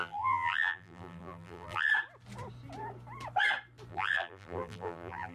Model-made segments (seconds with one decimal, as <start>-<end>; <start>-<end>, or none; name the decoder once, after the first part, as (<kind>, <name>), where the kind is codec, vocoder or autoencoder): 0.0-1.9 (vocoder, BigVGAN v2); 3.9-5.3